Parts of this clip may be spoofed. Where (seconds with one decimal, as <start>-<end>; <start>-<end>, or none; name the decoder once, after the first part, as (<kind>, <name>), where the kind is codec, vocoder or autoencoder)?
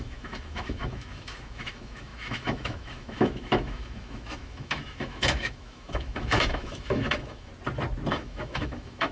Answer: 0.0-7.5 (autoencoder, DAC-VAE); 8.1-9.1